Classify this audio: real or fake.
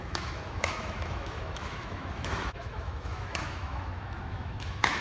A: fake